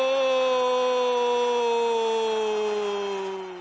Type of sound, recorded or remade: recorded